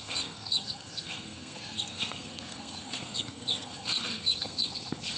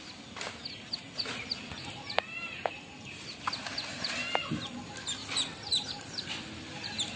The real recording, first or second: second